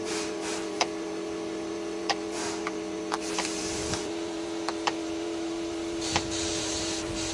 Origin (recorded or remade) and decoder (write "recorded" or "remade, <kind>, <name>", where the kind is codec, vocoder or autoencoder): remade, vocoder, BigVGAN v2